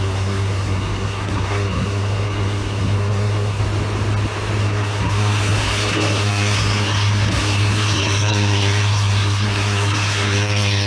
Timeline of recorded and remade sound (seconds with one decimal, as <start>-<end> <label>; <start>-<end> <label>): 0.0-3.6 remade; 3.6-4.6 recorded; 4.6-10.9 remade